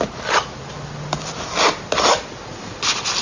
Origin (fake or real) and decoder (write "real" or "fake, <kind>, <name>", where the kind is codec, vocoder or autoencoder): real